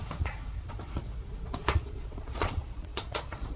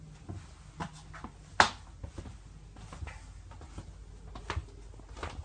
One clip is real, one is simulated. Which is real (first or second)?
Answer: second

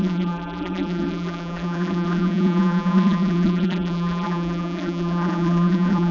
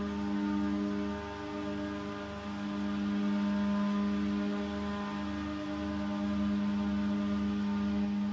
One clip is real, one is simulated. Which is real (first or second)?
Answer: second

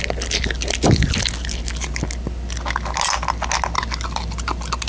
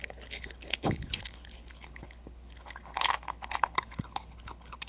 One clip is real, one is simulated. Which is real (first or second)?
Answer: first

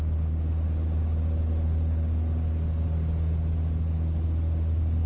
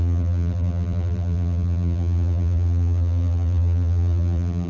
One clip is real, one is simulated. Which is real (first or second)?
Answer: first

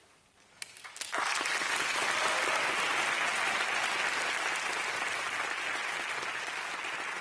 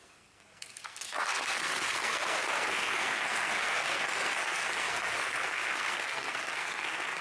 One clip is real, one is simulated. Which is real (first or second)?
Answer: first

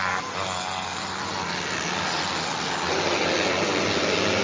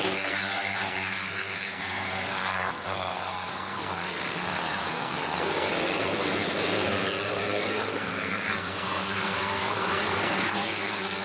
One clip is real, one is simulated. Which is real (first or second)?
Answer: first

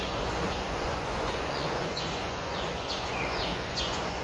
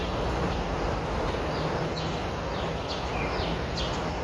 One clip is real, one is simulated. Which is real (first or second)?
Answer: second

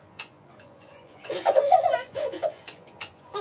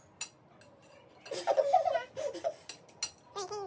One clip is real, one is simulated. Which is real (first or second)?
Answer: second